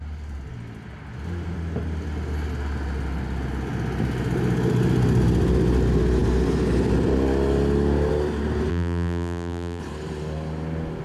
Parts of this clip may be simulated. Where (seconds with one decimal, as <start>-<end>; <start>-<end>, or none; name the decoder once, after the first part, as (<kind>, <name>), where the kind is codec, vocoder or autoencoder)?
8.7-9.8 (vocoder, BigVGAN v2)